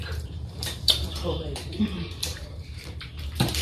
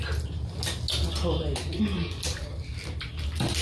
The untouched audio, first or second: second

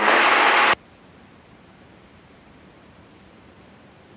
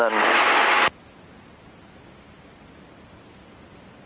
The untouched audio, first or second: second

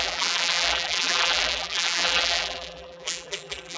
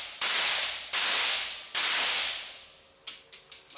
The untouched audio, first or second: second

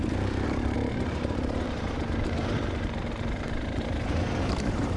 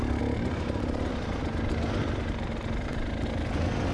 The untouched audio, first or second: second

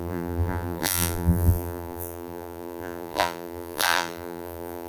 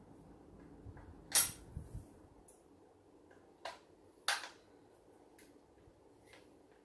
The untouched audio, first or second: second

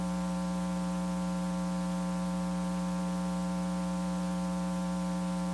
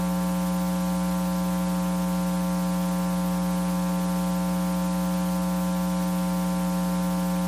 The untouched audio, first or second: second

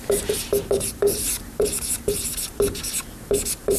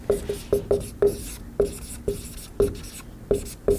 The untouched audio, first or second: second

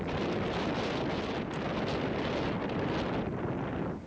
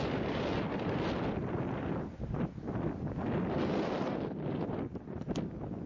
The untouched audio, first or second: first